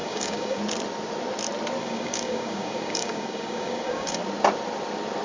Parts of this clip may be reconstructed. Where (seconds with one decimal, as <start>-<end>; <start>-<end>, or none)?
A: 0.0-0.6; 1.8-4.2